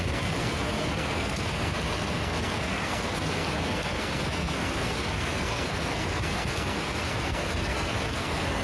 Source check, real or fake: fake